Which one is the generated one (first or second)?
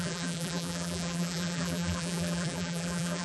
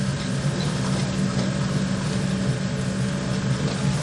first